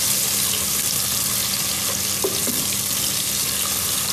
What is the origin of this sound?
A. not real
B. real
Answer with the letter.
B